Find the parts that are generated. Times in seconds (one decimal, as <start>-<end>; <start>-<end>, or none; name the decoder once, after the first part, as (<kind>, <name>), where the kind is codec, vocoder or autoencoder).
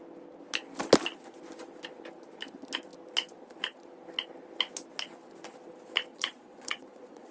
6.1-7.3 (vocoder, Vocos)